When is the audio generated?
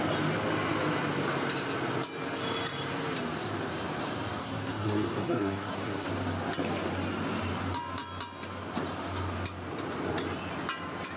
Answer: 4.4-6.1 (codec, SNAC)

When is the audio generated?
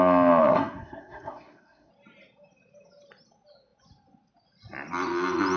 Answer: 0.4-1.9 (codec, SNAC)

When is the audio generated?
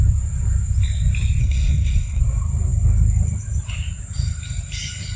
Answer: 1.4-2.2 (codec, SNAC)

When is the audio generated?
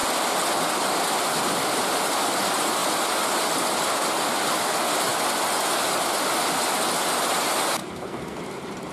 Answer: 7.8-8.4 (codec, SNAC)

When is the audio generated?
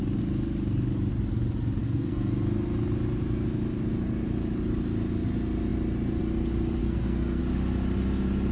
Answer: 1.8-2.3 (codec, SNAC); 6.8-7.4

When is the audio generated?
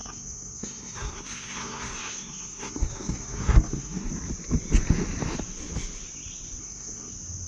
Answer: 0.0-4.1 (codec, SNAC); 6.6-7.1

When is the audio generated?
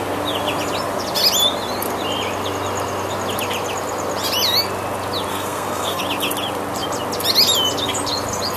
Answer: 5.3-6.0 (codec, SNAC)